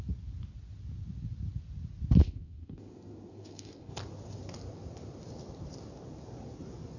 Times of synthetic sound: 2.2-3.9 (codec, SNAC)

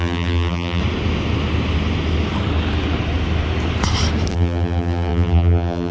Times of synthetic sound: 0.0-0.8 (vocoder, BigVGAN v2); 4.3-5.9